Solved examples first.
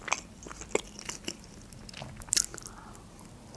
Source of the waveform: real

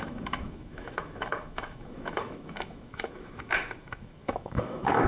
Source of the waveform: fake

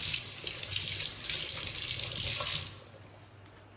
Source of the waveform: real